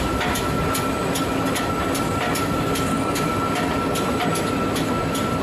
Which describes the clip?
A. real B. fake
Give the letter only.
A